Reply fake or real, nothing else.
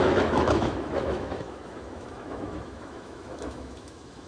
fake